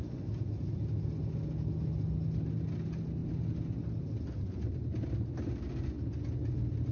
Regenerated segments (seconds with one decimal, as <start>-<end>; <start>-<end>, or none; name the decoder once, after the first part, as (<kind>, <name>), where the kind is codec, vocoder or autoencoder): none